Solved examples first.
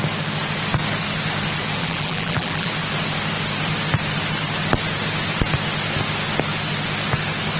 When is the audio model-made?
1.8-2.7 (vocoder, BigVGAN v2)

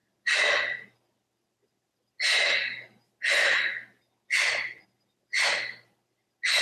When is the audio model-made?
none

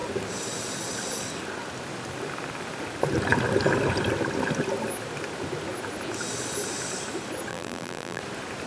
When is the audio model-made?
7.5-8.2 (vocoder, BigVGAN v2)

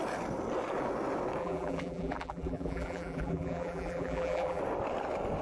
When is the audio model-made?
1.4-4.6 (vocoder, BigVGAN v2)

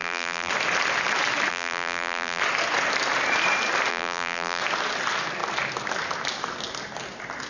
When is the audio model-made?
0.0-0.5 (vocoder, BigVGAN v2); 1.5-2.4; 3.9-4.6

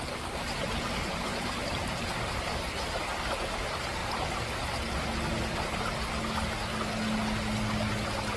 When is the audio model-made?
1.3-1.9 (vocoder, BigVGAN v2)

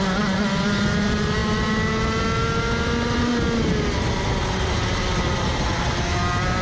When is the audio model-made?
none

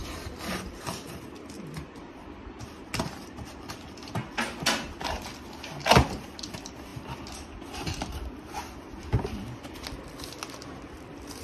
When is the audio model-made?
0.0-4.1 (vocoder, BigVGAN v2)